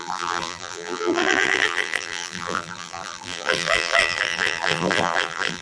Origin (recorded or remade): remade